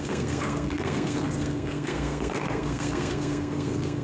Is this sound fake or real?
fake